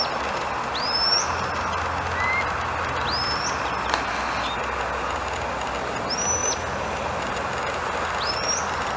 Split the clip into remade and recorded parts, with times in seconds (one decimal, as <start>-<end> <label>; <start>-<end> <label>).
0.0-9.0 recorded